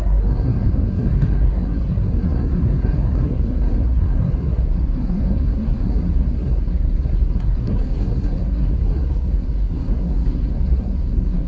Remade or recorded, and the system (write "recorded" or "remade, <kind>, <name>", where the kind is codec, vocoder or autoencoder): remade, codec, SNAC